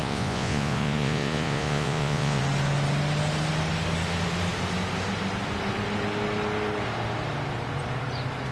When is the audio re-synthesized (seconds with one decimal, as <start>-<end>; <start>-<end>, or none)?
0.0-2.4